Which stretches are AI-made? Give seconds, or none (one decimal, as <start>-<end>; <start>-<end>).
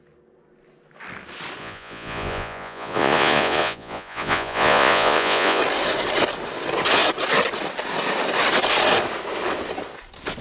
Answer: 1.6-5.6